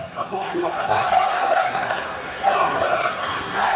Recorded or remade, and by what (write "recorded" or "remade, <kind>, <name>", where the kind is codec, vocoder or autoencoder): remade, codec, SNAC